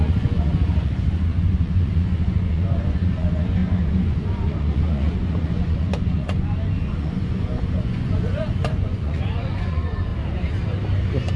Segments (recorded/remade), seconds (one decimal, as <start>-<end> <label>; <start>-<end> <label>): 0.0-10.1 remade; 10.1-11.4 recorded